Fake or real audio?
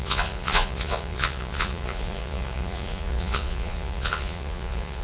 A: fake